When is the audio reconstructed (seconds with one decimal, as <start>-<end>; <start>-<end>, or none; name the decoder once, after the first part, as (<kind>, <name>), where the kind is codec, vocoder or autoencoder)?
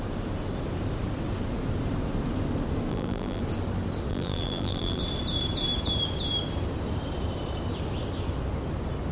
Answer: 2.9-3.4 (vocoder, BigVGAN v2); 4.1-5.0